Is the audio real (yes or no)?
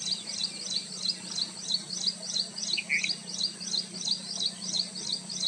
yes